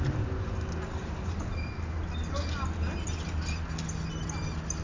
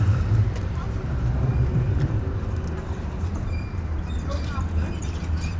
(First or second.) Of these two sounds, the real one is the first